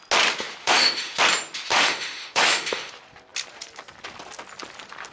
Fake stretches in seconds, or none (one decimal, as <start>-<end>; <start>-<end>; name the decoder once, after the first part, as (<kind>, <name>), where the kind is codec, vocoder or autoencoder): 0.6-1.2 (autoencoder, DAC-VAE); 1.7-2.9